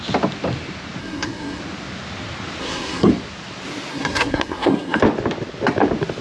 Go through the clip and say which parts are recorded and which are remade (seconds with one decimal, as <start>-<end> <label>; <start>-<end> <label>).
0.0-1.0 recorded; 1.0-1.6 remade; 1.6-2.6 recorded; 2.6-3.1 remade; 3.1-3.9 recorded; 3.9-5.0 remade; 5.0-6.2 recorded